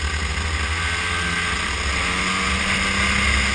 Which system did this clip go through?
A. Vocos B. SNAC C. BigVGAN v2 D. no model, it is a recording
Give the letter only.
D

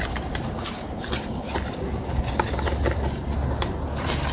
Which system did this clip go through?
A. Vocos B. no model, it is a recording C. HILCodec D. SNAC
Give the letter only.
B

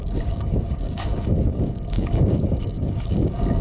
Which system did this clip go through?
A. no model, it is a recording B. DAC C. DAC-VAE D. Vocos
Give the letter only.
B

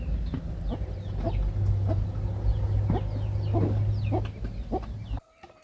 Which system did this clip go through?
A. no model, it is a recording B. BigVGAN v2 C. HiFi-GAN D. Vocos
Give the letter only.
A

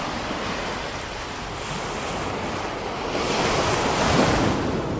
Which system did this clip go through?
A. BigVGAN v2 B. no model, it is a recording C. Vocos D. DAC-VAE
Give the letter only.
B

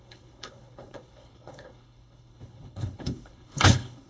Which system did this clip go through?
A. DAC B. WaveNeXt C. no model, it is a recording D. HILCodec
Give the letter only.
D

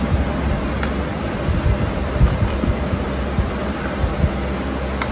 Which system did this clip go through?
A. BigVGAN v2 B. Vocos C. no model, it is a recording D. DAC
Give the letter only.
C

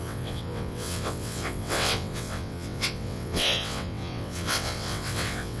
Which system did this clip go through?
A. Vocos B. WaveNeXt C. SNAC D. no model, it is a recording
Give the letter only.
B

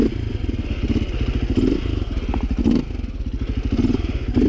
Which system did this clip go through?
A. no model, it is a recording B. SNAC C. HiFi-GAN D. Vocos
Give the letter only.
A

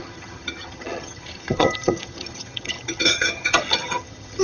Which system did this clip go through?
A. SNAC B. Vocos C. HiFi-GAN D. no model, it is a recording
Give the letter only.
C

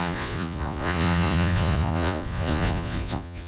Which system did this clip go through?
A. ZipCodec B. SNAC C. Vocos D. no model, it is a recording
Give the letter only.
C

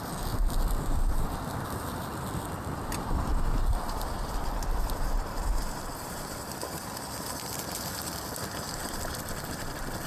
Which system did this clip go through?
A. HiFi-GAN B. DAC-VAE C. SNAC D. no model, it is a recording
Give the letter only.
D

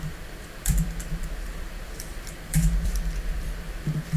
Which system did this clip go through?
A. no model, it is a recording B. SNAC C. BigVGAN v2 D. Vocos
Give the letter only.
C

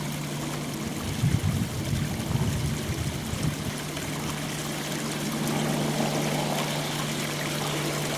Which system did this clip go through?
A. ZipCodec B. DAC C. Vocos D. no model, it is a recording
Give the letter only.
D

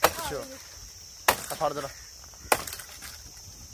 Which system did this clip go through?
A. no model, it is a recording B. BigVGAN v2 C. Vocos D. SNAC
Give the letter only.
A